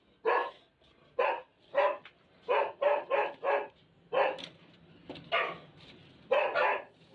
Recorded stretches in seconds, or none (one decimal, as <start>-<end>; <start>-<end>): 0.0-7.1